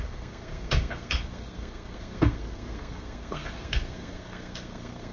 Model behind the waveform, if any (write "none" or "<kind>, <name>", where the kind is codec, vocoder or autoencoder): codec, SNAC